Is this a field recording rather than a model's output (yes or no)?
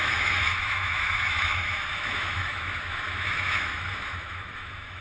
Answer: no